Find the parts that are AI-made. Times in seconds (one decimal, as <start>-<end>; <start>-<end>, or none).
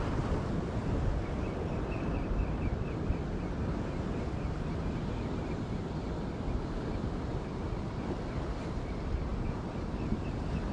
none